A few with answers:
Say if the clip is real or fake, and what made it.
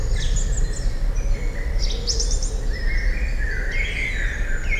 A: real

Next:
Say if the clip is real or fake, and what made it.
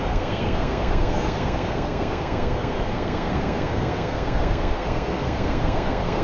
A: fake, codec, SNAC